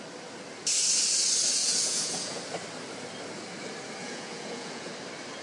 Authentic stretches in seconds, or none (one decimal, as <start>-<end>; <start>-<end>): 0.0-1.6; 2.4-4.0; 4.9-5.4